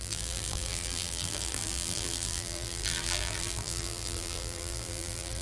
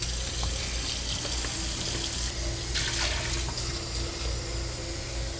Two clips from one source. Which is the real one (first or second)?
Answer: second